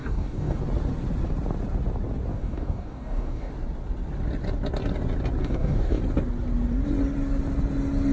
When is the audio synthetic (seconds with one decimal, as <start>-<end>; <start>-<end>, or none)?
0.0-0.6; 2.3-3.5; 5.4-6.0